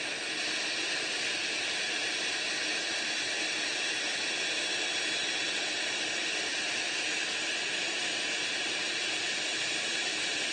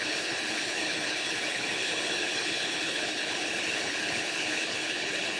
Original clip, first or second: first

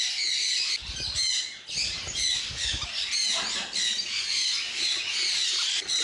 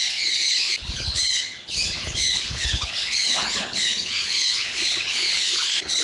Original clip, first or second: first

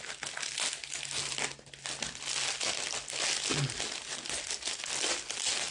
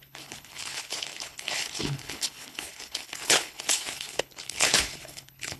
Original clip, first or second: first